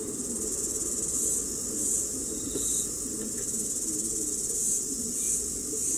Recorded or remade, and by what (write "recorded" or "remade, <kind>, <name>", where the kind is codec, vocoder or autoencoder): recorded